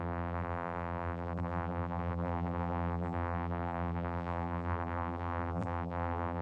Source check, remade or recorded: remade